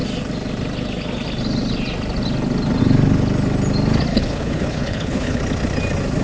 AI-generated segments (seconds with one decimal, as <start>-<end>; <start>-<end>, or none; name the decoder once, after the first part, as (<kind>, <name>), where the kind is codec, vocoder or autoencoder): 4.1-5.4 (codec, HILCodec)